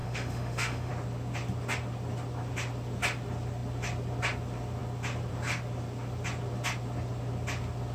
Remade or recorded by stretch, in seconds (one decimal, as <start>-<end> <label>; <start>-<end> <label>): 0.0-0.9 remade; 0.9-7.9 recorded